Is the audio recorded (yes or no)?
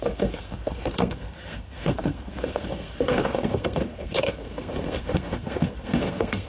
no